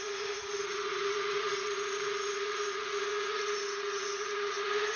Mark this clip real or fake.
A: fake